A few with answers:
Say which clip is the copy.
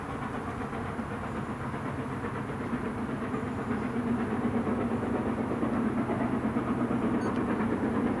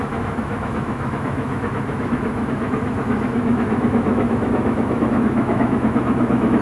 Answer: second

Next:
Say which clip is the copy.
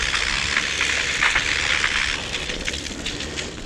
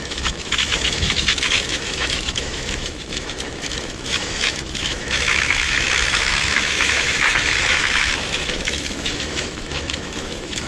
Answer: second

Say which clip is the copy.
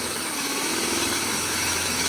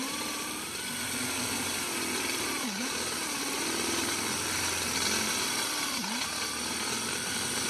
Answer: first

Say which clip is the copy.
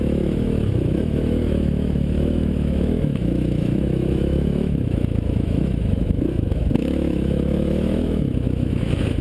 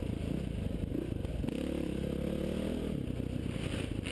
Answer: first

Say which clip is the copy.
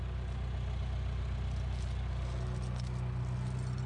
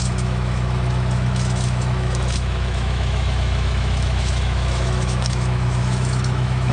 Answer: second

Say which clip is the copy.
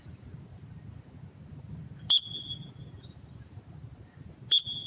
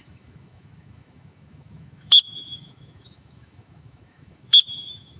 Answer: second